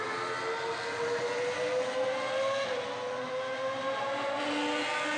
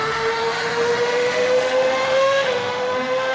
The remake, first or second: second